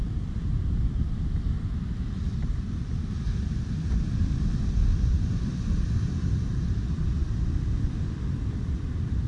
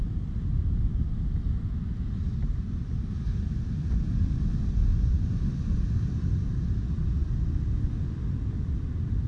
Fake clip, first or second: first